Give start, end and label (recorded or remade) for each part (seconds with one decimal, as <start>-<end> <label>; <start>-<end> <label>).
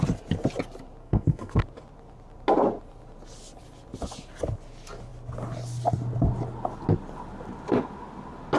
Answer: 0.0-1.0 recorded; 1.0-1.6 remade; 1.6-8.6 recorded